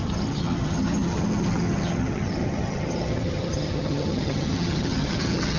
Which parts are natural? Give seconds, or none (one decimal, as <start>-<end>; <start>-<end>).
none